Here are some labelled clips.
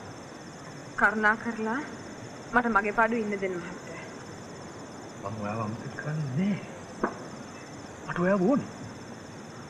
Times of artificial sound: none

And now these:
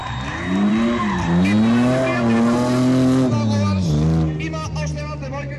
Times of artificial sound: none